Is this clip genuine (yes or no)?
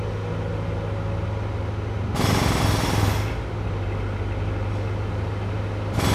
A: yes